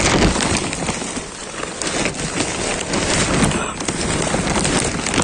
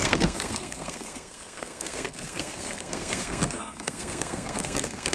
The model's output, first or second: second